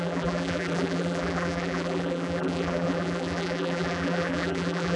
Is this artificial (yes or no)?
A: yes